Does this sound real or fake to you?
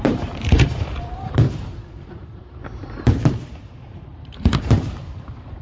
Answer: fake